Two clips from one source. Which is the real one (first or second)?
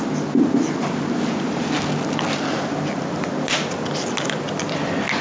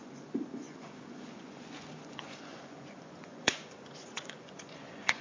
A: first